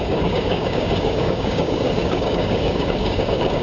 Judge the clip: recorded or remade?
remade